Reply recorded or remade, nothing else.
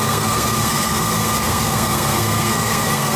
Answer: remade